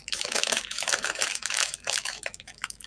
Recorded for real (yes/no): no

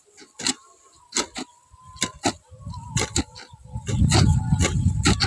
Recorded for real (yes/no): yes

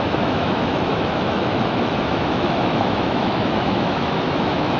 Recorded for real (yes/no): no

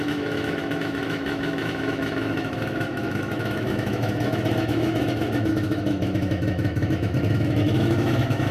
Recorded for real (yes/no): no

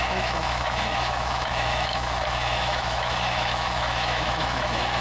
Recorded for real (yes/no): no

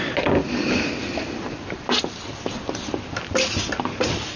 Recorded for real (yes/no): yes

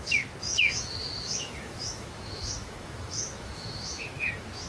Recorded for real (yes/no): no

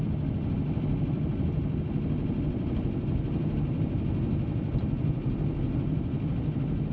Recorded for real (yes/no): yes